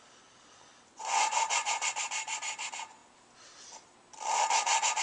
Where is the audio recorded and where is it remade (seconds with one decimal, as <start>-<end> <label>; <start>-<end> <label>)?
0.0-0.9 recorded; 0.9-1.9 remade; 1.9-5.0 recorded